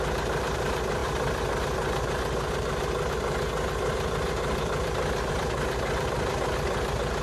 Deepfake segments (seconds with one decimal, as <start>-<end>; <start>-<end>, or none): none